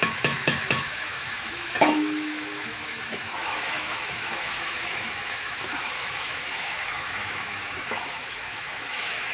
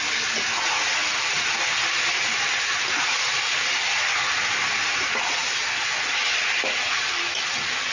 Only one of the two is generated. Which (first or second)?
first